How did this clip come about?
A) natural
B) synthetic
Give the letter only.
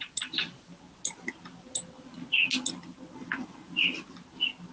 A